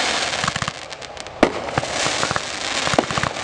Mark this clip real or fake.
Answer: real